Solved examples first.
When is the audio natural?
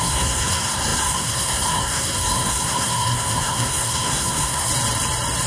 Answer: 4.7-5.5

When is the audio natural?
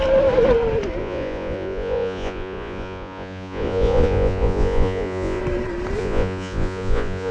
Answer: 0.0-1.0; 5.4-6.0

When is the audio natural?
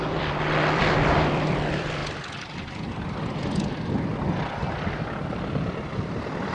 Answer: 2.0-5.9